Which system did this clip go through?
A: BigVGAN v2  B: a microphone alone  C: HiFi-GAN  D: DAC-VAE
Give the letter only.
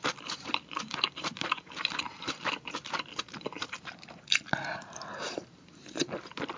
A